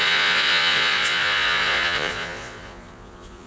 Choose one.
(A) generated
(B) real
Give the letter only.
A